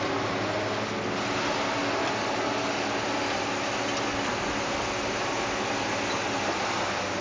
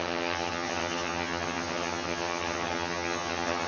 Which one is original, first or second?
first